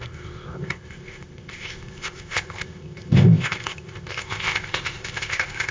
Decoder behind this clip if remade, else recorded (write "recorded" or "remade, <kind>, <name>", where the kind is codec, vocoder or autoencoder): remade, codec, ZipCodec